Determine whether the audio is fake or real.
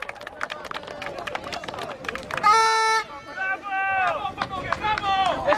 real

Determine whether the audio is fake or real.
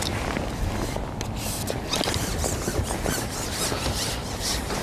real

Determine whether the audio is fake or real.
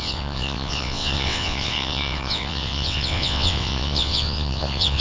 fake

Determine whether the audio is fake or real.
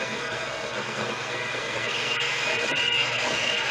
fake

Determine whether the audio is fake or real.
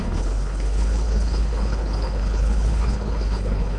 fake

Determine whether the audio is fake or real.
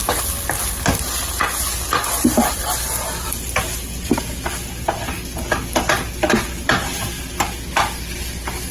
real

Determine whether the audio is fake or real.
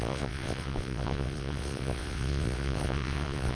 fake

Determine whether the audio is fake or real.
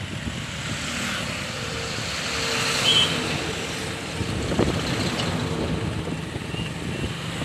real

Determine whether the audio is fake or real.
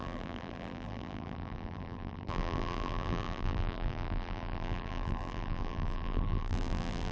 fake